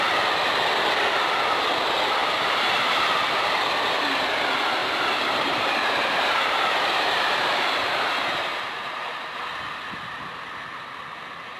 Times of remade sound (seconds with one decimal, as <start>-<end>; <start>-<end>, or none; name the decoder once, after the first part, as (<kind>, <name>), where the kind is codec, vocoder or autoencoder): 2.2-3.0 (vocoder, BigVGAN v2); 4.8-9.5